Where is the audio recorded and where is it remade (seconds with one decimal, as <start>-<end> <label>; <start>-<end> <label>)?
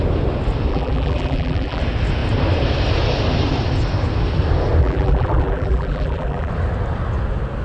0.0-0.7 recorded; 0.7-1.8 remade; 1.8-4.8 recorded; 4.8-6.5 remade; 6.5-7.6 recorded